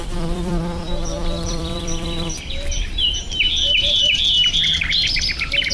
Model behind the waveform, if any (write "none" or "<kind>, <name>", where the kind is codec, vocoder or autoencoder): vocoder, BigVGAN v2